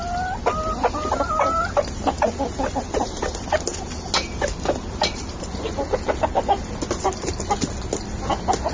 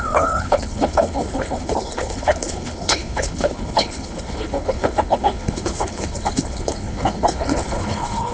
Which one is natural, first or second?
first